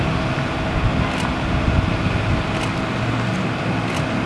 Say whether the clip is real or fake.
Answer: real